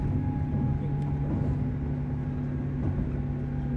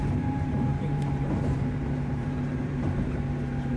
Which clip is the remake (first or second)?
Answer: second